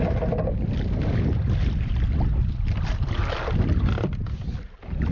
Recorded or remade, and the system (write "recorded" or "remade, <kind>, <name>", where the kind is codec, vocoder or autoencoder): recorded